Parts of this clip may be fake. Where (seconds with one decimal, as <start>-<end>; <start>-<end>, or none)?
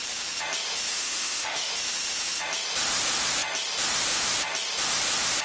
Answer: 0.9-1.7